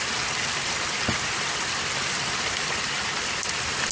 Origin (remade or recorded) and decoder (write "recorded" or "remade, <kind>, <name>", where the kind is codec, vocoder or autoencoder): recorded